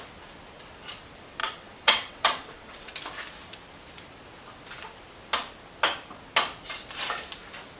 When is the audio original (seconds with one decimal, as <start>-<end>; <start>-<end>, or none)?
0.0-1.4; 2.9-7.8